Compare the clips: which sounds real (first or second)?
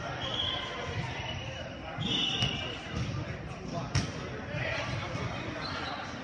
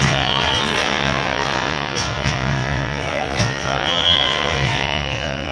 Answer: first